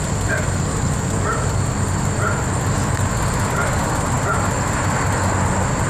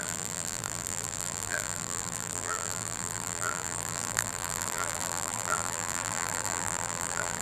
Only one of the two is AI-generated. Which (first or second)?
second